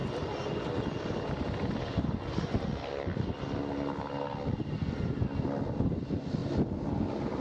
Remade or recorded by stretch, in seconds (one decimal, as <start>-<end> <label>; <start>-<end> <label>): 0.0-7.4 recorded